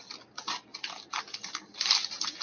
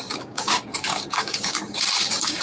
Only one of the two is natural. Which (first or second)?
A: first